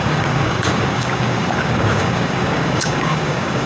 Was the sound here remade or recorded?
remade